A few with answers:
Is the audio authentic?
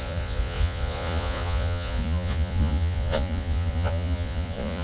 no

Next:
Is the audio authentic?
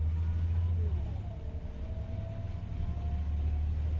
yes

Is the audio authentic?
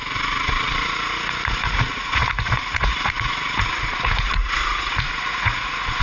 no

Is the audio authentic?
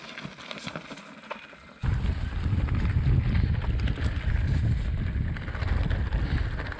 yes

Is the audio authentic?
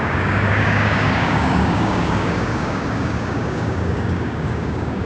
no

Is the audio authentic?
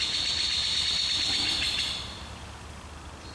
yes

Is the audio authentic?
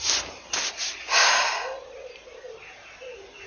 yes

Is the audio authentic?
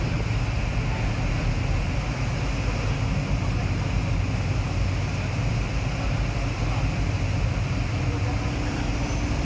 yes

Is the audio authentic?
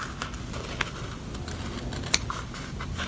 yes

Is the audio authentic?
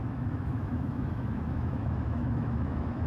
no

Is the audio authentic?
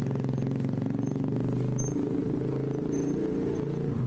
yes